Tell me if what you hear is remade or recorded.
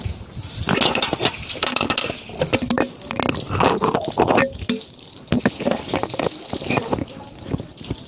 recorded